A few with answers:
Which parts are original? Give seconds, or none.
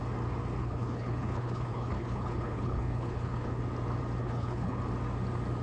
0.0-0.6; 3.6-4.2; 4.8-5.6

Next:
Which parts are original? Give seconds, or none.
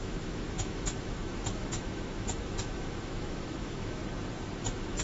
4.0-4.6